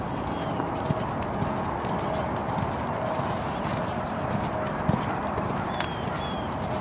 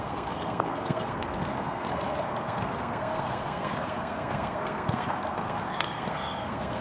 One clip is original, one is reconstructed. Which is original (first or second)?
first